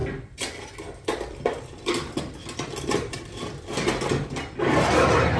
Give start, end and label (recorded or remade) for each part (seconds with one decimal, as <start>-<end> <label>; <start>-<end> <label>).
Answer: 0.0-5.4 recorded